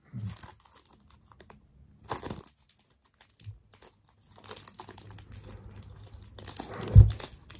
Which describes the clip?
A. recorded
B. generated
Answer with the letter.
A